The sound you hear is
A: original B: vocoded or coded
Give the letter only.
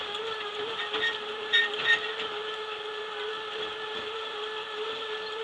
B